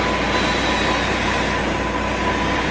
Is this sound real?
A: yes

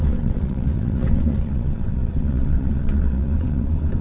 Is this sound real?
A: no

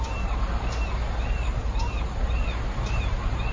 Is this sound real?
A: yes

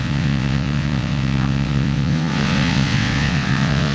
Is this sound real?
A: no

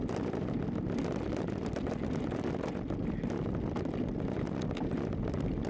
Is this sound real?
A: yes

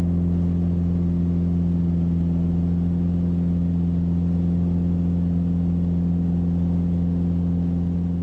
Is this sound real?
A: yes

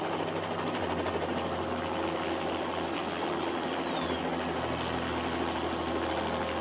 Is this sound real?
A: yes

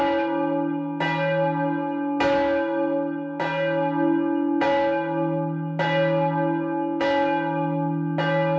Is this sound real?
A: yes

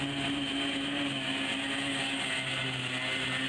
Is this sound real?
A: yes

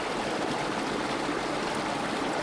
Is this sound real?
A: yes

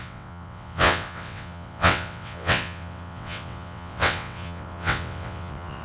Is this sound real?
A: no